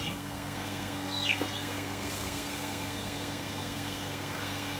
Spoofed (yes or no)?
yes